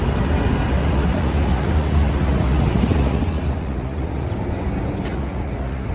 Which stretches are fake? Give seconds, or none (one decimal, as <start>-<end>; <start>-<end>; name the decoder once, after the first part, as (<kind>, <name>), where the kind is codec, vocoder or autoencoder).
0.8-4.3 (vocoder, Vocos); 5.1-5.9